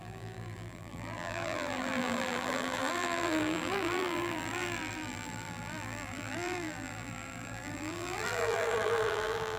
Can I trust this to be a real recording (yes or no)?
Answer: no